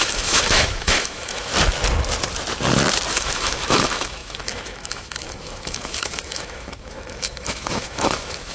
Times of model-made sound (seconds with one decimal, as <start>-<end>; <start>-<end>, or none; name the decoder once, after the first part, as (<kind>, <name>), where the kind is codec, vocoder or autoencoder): 0.0-1.5 (autoencoder, DAC-VAE); 3.1-8.5